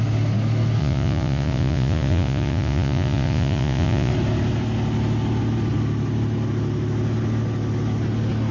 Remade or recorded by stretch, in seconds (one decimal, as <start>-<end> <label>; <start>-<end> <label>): 0.0-0.8 recorded; 0.8-4.1 remade; 4.1-8.5 recorded